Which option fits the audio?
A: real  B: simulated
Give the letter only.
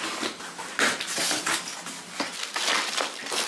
A